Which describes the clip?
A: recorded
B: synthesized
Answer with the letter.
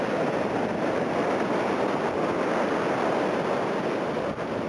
A